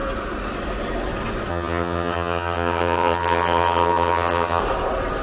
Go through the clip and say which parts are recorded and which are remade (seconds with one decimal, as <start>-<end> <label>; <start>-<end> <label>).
0.0-1.5 recorded; 1.5-4.6 remade; 4.6-5.2 recorded

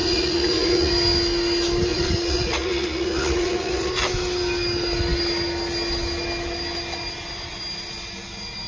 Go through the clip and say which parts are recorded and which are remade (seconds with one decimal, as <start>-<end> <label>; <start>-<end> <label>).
0.0-0.9 remade; 0.9-1.9 recorded; 1.9-3.9 remade; 3.9-8.7 recorded

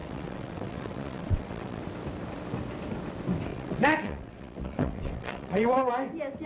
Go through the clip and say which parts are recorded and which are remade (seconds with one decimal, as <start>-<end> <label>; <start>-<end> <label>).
0.0-1.8 remade; 1.8-3.5 recorded; 3.5-5.9 remade; 5.9-6.5 recorded